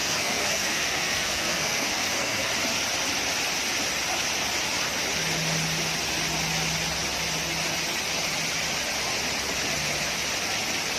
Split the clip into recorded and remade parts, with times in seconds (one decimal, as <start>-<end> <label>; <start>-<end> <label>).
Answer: 0.0-2.5 remade; 2.5-11.0 recorded